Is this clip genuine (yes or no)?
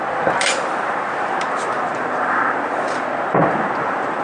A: yes